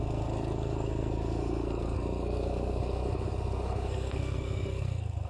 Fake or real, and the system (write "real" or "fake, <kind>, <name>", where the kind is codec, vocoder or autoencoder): fake, codec, SNAC